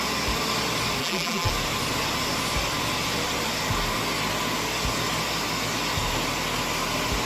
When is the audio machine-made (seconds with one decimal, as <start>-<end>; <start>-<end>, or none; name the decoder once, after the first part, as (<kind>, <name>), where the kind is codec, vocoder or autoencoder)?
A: 1.0-1.5 (vocoder, BigVGAN v2)